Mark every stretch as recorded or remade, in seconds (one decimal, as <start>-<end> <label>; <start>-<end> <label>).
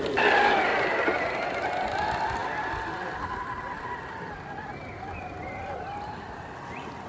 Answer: 0.0-7.1 recorded